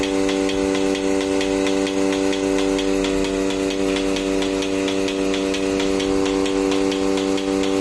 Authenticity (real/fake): real